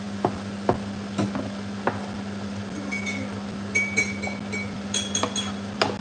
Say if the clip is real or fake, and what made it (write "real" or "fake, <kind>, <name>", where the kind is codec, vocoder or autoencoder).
real